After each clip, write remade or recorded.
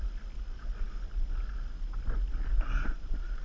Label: recorded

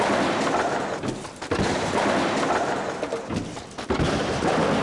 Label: recorded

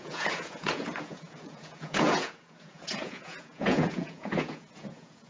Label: remade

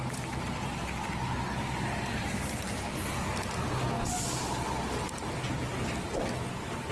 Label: recorded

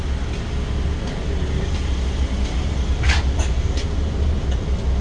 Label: recorded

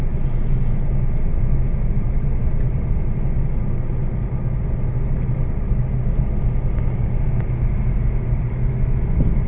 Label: recorded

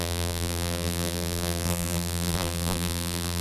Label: remade